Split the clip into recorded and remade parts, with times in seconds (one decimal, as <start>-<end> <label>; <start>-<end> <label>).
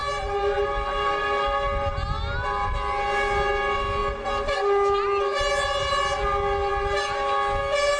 0.0-8.0 recorded